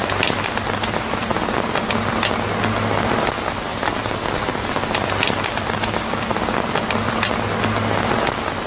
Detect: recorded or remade recorded